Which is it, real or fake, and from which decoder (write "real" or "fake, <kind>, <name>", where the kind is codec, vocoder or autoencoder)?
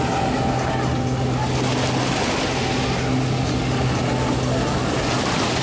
real